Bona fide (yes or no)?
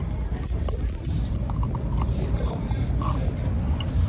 no